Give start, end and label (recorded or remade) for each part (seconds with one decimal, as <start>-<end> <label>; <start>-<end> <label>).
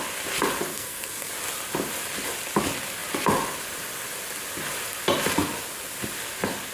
0.0-0.7 recorded; 0.7-1.3 remade; 1.3-6.7 recorded